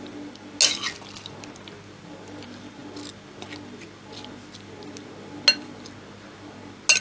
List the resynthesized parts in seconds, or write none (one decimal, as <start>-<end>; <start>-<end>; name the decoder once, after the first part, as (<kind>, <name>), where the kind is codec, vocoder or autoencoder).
none